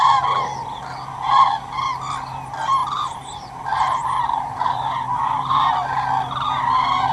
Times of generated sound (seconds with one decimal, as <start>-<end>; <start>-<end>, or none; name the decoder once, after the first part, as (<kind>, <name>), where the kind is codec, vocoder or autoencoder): 2.8-5.7 (vocoder, BigVGAN v2)